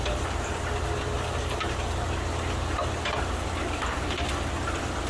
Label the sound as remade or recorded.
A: recorded